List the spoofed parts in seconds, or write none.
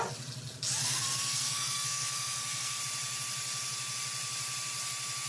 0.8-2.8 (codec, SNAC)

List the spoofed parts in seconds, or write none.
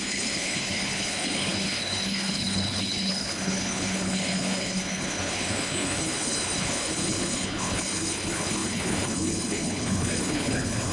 0.0-10.9 (codec, HILCodec)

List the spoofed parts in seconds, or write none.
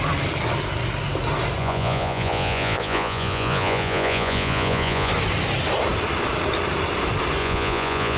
1.6-5.1 (vocoder, Vocos); 7.4-8.2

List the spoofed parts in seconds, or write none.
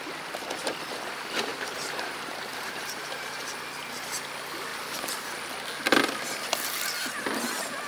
1.5-3.5 (vocoder, BigVGAN v2)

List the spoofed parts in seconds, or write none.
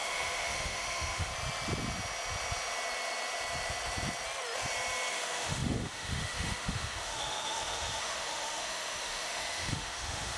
0.0-1.3 (autoencoder, DAC-VAE); 5.1-10.4